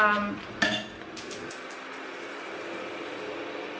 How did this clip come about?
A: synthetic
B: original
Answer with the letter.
B